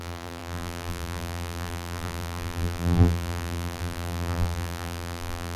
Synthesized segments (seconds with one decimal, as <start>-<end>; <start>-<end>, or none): 0.0-5.6